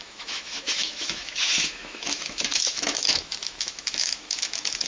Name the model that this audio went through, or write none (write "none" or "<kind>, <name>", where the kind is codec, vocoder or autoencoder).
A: autoencoder, DAC-VAE